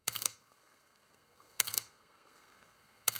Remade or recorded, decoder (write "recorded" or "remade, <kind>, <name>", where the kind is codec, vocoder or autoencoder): remade, codec, SNAC